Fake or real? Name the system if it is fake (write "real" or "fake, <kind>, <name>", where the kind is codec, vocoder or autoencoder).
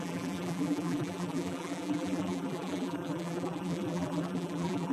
fake, vocoder, BigVGAN v2